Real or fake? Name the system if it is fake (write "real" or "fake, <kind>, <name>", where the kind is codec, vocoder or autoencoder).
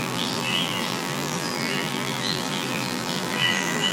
fake, vocoder, BigVGAN v2